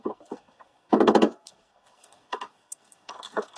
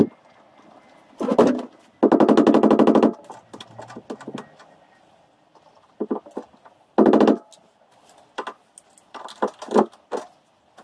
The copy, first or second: first